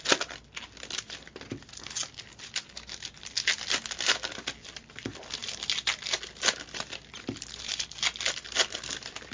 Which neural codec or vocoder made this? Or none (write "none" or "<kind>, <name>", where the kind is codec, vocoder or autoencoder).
none